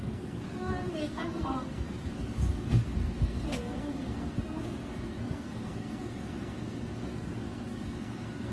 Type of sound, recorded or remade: remade